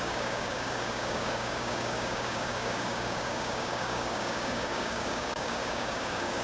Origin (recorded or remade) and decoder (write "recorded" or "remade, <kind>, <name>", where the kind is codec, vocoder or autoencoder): remade, codec, DAC